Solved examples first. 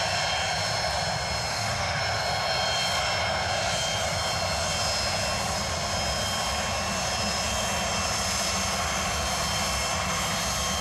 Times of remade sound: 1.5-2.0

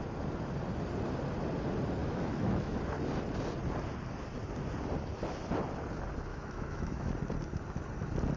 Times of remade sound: 2.0-2.8; 6.3-7.1